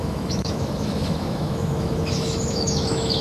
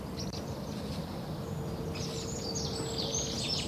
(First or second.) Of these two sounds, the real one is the second